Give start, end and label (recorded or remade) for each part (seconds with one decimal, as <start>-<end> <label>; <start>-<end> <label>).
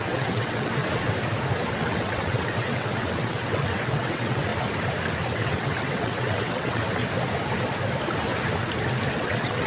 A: 0.0-0.8 remade; 0.8-1.7 recorded; 1.7-4.5 remade; 4.5-5.3 recorded; 5.3-7.0 remade; 7.0-9.1 recorded; 9.1-9.7 remade